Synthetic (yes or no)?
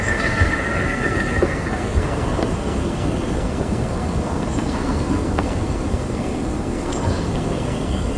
yes